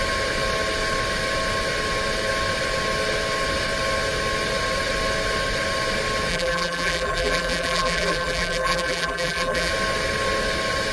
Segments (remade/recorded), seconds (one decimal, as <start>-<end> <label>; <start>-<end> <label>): 0.0-6.3 recorded; 6.3-9.7 remade; 9.7-10.9 recorded